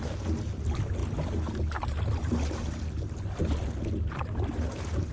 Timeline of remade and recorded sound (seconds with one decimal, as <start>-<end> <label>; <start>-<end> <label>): 0.0-5.1 recorded